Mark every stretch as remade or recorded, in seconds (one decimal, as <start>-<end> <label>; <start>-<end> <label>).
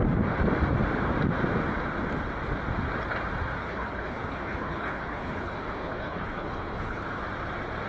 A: 0.0-3.6 recorded; 3.6-7.2 remade; 7.2-7.9 recorded